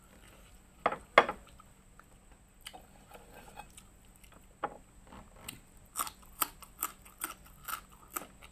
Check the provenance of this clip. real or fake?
real